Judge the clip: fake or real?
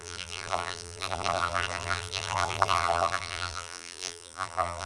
fake